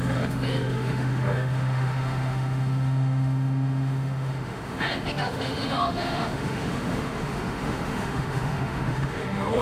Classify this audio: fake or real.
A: fake